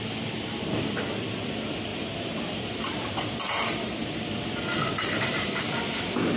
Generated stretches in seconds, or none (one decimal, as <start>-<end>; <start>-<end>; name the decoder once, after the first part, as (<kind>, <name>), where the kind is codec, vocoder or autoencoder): 0.0-6.4 (vocoder, BigVGAN v2)